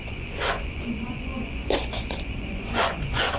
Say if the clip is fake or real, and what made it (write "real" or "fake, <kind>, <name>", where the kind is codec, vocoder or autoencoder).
fake, vocoder, Vocos